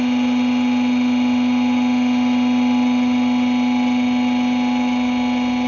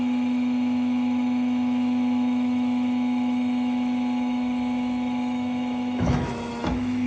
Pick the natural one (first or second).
first